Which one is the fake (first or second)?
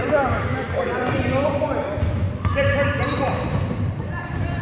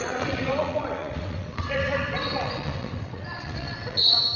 second